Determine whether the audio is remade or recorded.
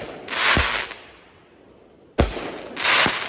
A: recorded